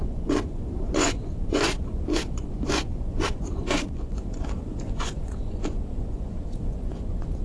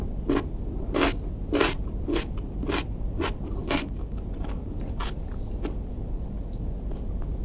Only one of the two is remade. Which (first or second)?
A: first